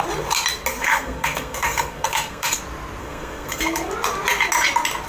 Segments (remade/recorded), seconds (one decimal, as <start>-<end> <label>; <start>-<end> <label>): 0.0-0.7 recorded; 0.7-2.6 remade; 2.6-3.0 recorded; 3.0-3.9 remade; 3.9-5.1 recorded